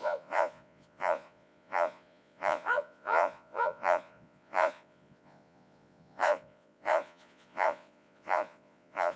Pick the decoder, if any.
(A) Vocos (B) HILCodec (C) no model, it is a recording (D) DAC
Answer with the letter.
A